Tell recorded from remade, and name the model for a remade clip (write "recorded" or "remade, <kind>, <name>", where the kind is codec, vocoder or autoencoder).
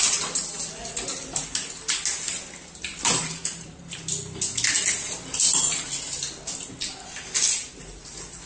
recorded